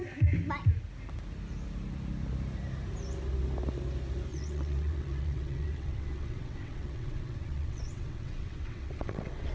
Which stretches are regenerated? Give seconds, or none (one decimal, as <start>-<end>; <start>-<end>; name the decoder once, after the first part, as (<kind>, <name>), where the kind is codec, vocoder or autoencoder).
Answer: 4.3-9.5 (vocoder, WaveNeXt)